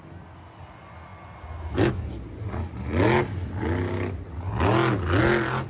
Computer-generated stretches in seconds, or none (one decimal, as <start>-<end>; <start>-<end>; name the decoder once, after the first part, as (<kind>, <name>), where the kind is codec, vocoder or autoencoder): none